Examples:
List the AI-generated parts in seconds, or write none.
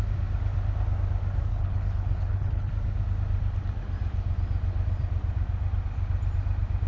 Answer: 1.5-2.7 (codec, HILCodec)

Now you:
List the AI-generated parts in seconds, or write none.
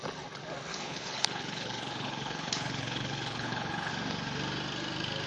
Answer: 0.7-3.9 (codec, HILCodec)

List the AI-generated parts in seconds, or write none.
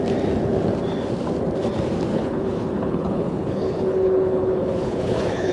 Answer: 2.1-5.5 (codec, HILCodec)